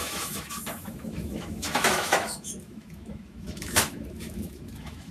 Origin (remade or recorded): remade